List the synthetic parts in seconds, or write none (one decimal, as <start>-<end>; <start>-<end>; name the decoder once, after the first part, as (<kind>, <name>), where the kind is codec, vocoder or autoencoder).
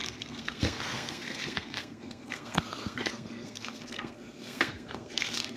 0.0-5.6 (codec, SNAC)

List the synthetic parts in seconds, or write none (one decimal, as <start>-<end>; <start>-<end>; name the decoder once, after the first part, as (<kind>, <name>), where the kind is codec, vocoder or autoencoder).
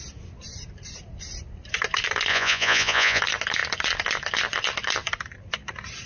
2.3-3.2 (vocoder, Vocos)